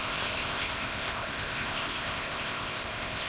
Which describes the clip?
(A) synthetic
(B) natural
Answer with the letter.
A